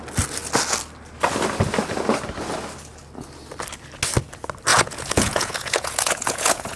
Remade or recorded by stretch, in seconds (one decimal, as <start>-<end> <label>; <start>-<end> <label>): 0.0-4.7 recorded; 4.7-6.8 remade